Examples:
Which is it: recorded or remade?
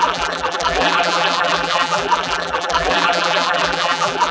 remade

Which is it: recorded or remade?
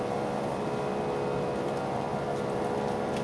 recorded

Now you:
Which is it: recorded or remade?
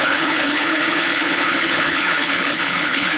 remade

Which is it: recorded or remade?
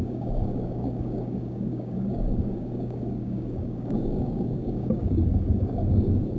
remade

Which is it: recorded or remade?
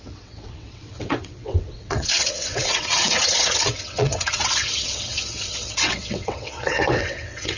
remade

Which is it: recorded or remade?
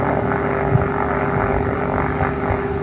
recorded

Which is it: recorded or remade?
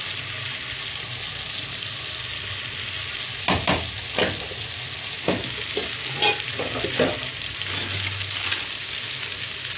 recorded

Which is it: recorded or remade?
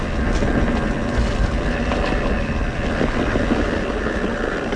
recorded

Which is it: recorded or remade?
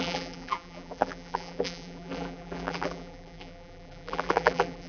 remade